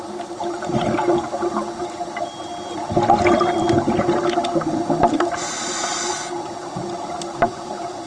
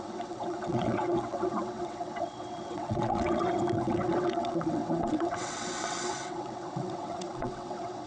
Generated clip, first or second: second